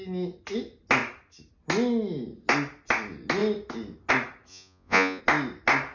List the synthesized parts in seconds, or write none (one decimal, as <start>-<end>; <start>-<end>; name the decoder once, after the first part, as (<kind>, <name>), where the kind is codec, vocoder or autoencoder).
4.5-5.2 (vocoder, Vocos)